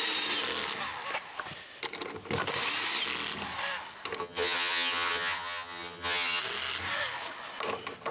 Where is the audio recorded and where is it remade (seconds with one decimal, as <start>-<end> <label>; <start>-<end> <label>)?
0.0-4.2 recorded; 4.2-6.4 remade; 6.4-8.1 recorded